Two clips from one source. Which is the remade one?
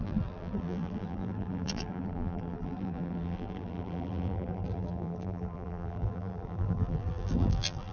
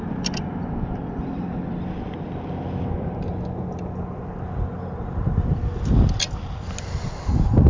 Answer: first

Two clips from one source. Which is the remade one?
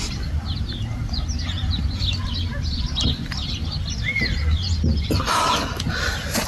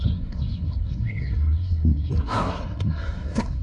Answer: second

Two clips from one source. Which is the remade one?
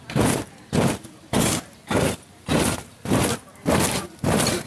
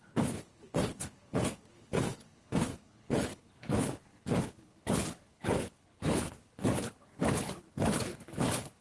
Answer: second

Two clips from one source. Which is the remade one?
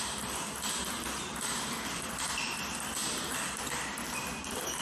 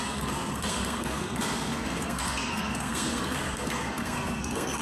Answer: second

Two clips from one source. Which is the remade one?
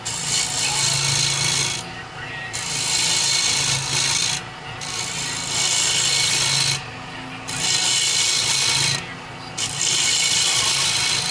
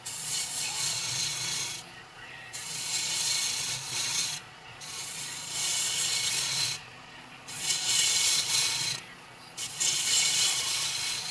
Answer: second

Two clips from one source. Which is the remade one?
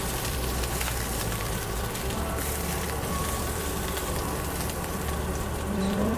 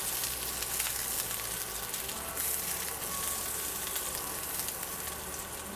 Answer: first